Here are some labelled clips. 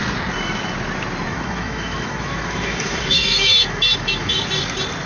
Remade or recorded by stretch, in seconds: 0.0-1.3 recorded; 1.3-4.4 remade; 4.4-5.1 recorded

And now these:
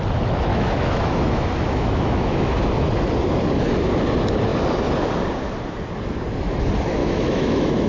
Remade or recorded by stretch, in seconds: 0.0-0.5 recorded; 0.5-2.5 remade; 2.5-7.0 recorded; 7.0-7.9 remade

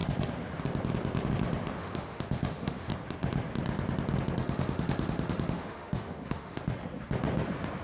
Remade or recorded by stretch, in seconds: 0.0-1.8 recorded; 1.8-2.9 remade; 2.9-4.4 recorded; 4.4-6.6 remade; 6.6-7.8 recorded

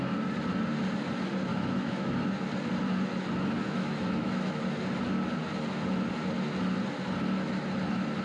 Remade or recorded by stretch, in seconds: 0.0-1.5 recorded; 1.5-2.1 remade; 2.1-3.6 recorded; 3.6-4.6 remade; 4.6-8.2 recorded